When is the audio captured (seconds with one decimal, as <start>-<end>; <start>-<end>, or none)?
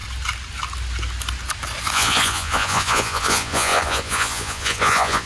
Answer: 0.0-1.9